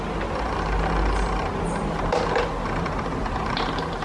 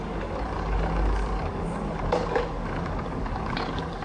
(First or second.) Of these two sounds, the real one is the first